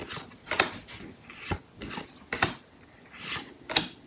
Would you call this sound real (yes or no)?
yes